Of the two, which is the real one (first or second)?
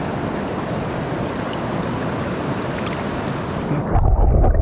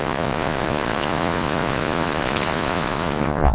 first